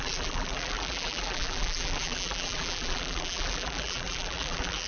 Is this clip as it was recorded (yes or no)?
no